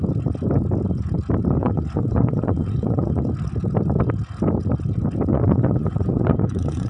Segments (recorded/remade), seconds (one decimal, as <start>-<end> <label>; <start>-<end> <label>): 0.0-1.6 recorded; 1.6-3.2 remade; 3.2-5.3 recorded; 5.3-6.9 remade